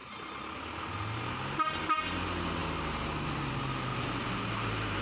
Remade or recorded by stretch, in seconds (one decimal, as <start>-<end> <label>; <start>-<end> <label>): 0.0-3.9 recorded; 3.9-5.0 remade